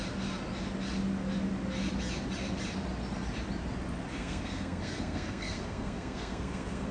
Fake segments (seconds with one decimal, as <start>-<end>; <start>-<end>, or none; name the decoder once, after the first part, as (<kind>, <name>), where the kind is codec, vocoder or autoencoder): 4.1-6.9 (codec, SNAC)